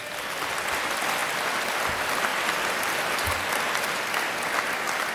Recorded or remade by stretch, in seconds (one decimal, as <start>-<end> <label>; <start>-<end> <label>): 0.0-5.1 recorded